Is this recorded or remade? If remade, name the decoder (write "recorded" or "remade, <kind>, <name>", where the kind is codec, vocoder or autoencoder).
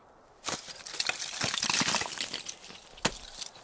recorded